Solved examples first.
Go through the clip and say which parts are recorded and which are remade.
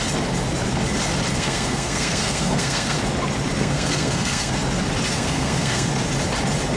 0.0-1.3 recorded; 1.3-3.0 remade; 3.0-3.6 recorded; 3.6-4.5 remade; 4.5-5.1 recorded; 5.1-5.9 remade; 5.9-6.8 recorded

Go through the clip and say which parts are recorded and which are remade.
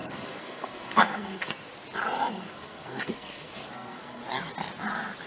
0.0-1.7 remade; 1.7-2.3 recorded; 2.3-4.2 remade; 4.2-5.3 recorded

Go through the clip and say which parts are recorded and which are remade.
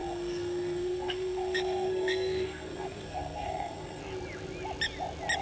0.0-4.0 remade; 4.0-5.4 recorded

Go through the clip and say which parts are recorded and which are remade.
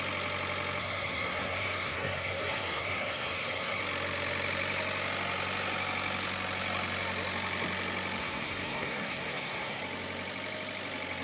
0.0-0.8 recorded; 0.8-3.8 remade; 3.8-8.2 recorded; 8.2-9.8 remade; 9.8-11.2 recorded